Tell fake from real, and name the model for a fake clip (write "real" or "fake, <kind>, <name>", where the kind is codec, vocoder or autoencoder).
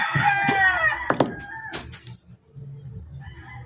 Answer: real